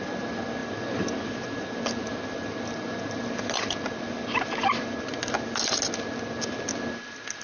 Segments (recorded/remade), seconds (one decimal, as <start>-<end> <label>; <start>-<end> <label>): 0.0-0.6 recorded; 0.6-5.0 remade; 5.0-7.4 recorded